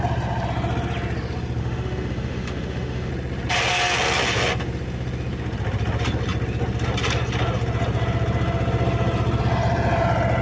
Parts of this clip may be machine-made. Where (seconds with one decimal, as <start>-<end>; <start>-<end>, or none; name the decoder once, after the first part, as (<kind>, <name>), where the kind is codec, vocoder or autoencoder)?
1.6-3.1 (autoencoder, DAC-VAE)